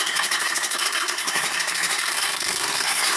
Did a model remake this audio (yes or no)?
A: yes